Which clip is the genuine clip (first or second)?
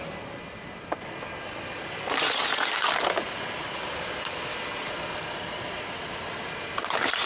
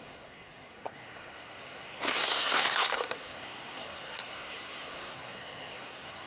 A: first